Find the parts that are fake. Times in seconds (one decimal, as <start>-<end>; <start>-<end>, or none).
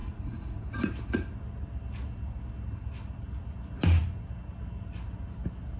0.0-0.6